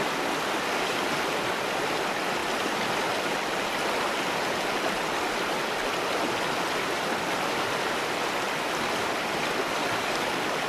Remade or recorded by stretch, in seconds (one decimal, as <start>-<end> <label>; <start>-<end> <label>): 0.0-10.7 recorded